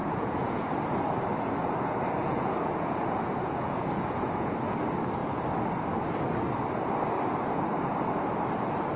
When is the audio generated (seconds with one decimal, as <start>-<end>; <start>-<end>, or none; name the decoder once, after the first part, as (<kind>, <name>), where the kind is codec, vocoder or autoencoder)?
0.0-0.7 (vocoder, Vocos); 2.2-4.5